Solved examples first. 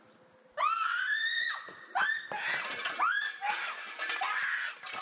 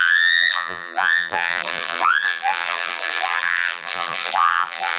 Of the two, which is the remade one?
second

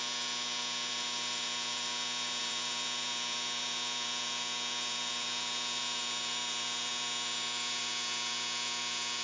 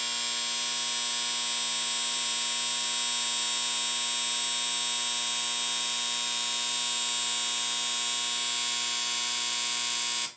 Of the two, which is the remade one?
first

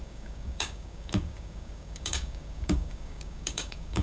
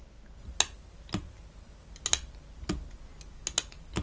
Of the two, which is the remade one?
first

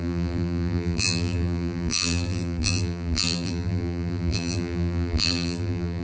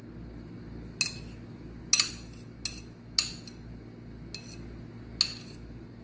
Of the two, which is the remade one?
first